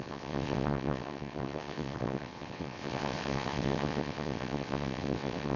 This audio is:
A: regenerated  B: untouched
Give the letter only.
A